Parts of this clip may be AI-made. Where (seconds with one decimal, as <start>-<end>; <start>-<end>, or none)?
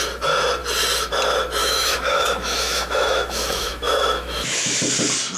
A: 1.6-4.8